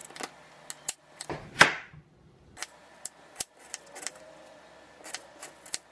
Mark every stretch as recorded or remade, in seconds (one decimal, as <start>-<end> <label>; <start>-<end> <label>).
0.0-5.9 recorded